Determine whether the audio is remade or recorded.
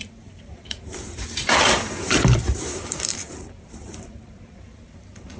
remade